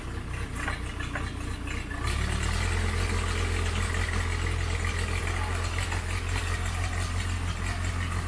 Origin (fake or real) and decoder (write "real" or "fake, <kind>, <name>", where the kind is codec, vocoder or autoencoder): real